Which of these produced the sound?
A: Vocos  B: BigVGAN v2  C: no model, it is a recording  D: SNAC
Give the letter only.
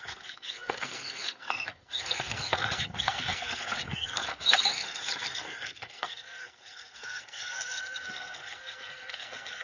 D